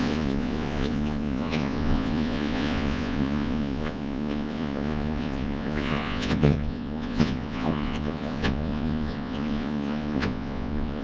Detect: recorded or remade remade